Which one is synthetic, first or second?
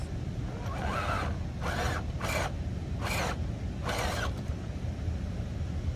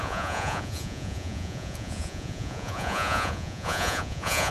second